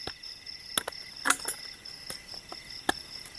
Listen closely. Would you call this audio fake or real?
real